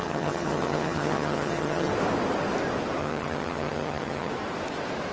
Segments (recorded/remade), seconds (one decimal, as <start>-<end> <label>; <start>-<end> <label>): 0.0-1.9 remade; 1.9-3.0 recorded; 3.0-4.3 remade; 4.3-5.1 recorded